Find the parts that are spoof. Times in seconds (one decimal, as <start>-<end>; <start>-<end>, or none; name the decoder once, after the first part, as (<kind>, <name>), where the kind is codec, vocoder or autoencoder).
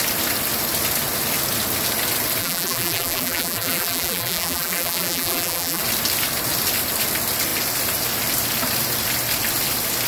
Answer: 2.4-5.8 (vocoder, BigVGAN v2)